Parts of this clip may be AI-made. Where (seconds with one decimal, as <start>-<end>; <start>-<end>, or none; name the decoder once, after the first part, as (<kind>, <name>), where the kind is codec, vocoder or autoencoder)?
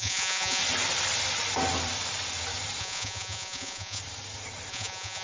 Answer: 0.0-0.6 (vocoder, Vocos); 2.8-4.0; 4.7-5.2